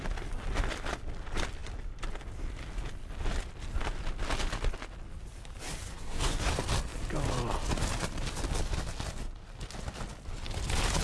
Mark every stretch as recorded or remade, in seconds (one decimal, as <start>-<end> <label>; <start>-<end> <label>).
0.0-5.9 recorded; 5.9-6.5 remade; 6.5-11.0 recorded